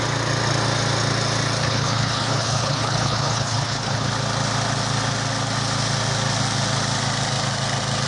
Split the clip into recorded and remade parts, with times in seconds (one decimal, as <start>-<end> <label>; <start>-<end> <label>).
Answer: 0.0-1.6 recorded; 1.6-4.1 remade; 4.1-8.1 recorded